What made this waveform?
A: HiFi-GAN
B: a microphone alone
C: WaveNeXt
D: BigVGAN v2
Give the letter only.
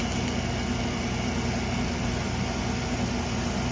B